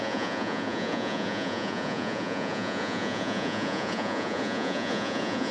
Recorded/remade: remade